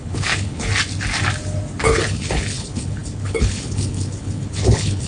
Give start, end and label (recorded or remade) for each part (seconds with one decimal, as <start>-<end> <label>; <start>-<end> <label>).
0.0-0.7 remade; 0.7-1.8 recorded; 1.8-5.1 remade